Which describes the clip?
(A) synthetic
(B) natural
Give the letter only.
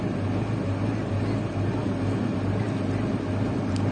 B